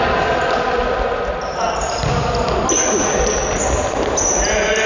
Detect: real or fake real